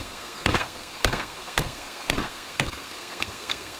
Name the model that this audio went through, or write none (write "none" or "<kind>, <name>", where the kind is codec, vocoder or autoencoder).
codec, SNAC